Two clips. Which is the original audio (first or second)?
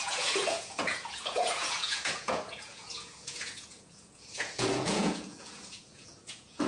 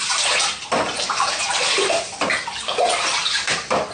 second